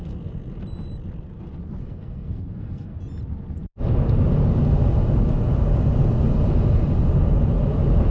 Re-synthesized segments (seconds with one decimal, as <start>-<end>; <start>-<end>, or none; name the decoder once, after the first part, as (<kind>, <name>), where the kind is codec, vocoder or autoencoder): 1.8-3.0 (codec, SNAC)